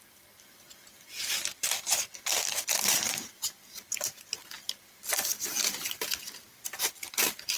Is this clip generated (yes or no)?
yes